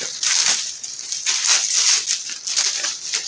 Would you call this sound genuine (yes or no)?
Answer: yes